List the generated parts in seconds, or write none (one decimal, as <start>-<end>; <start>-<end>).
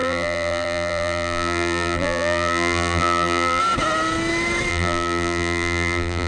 0.0-3.6; 4.7-6.3